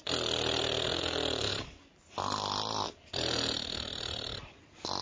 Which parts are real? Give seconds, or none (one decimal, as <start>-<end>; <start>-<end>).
0.0-5.0